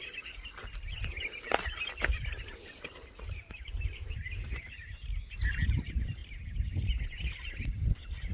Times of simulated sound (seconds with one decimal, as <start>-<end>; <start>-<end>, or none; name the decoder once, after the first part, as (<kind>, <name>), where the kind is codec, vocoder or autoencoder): none